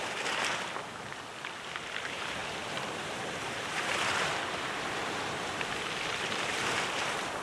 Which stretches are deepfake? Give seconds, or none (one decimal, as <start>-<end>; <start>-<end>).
0.0-7.4